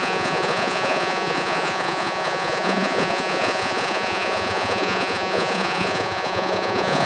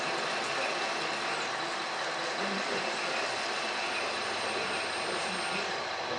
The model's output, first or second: first